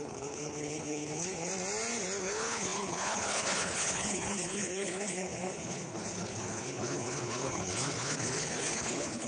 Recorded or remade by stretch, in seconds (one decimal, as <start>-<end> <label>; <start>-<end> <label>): 0.0-1.5 remade; 1.5-2.2 recorded; 2.2-9.3 remade